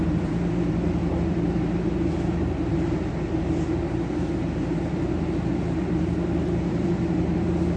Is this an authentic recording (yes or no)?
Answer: no